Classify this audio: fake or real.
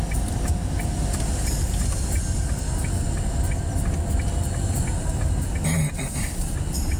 real